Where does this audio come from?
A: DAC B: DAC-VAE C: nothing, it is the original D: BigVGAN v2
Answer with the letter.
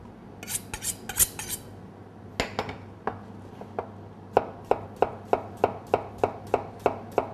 C